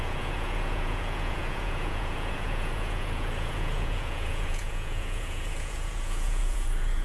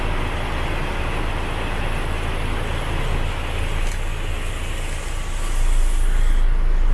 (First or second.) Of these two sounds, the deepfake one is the first